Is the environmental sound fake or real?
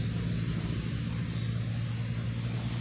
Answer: real